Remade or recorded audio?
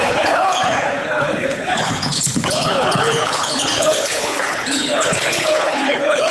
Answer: remade